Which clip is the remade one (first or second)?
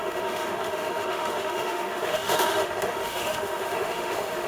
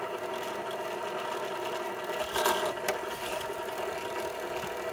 first